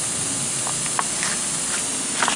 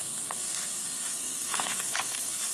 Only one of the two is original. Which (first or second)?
first